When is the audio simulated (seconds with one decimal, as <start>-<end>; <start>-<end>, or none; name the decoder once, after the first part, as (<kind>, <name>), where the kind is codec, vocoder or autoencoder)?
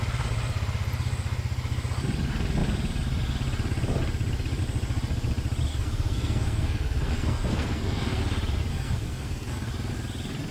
5.7-8.2 (codec, SNAC); 8.7-9.7